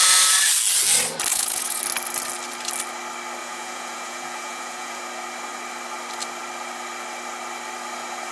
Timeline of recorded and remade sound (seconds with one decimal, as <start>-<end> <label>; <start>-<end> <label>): 0.0-1.3 recorded; 1.3-1.8 remade; 1.8-3.4 recorded; 3.4-5.0 remade; 5.0-8.3 recorded